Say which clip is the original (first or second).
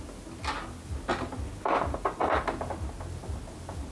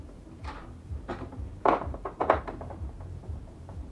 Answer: first